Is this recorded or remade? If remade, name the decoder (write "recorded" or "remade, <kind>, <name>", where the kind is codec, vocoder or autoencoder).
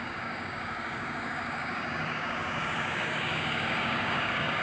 remade, codec, DAC